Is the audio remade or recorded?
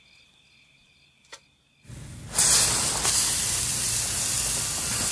recorded